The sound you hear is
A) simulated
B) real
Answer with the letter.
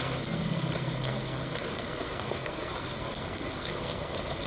A